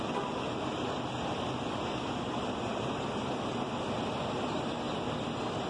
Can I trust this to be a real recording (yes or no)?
yes